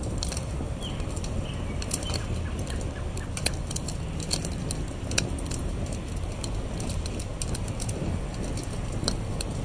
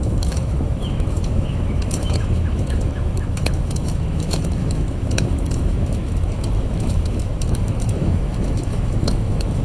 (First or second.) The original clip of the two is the first